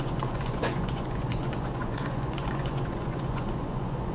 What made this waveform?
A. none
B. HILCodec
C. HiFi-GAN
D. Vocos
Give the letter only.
D